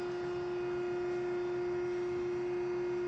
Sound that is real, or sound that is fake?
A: real